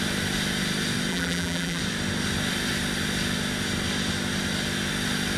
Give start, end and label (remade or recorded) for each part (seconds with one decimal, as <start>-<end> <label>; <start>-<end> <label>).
0.0-1.1 recorded; 1.1-1.8 remade; 1.8-5.4 recorded